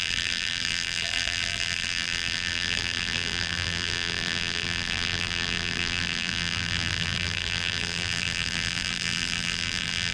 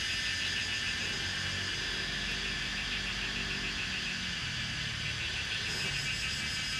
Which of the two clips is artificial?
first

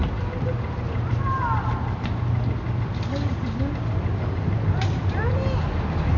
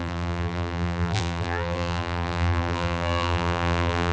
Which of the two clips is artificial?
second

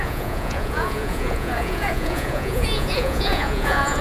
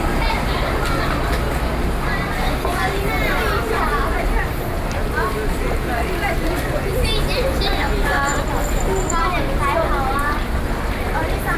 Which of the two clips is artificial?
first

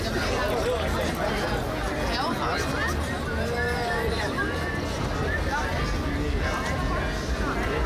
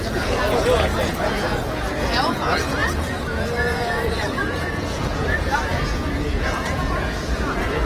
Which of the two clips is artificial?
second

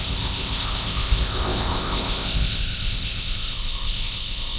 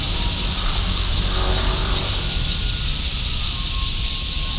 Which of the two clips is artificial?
first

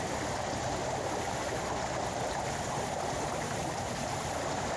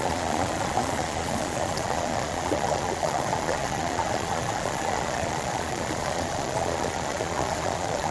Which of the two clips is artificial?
second